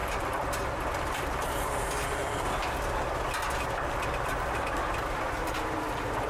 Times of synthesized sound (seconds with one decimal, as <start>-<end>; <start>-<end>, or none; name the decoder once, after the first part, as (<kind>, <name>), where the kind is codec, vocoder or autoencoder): 0.9-2.6 (vocoder, BigVGAN v2); 5.1-6.3